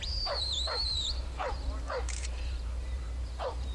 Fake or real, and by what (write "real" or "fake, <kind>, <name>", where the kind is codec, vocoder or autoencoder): fake, vocoder, BigVGAN v2